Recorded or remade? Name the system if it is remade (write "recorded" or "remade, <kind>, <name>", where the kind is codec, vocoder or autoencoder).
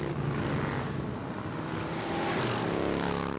recorded